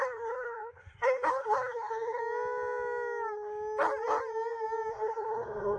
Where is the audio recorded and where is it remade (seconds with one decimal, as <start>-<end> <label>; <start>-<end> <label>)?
0.0-2.2 remade; 2.2-4.9 recorded; 4.9-5.8 remade